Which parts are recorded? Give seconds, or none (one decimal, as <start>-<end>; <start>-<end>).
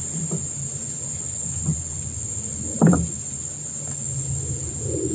0.0-1.7; 3.4-5.1